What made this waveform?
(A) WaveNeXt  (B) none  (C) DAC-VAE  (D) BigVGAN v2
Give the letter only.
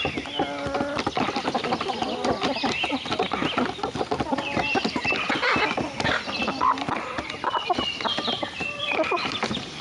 B